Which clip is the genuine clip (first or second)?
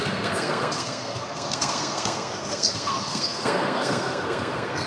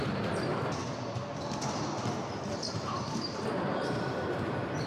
second